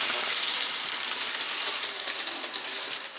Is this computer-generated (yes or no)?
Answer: no